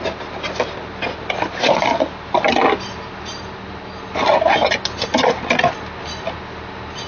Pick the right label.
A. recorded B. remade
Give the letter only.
A